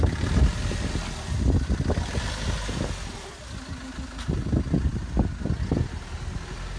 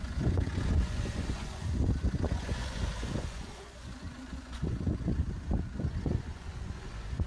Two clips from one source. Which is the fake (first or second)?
second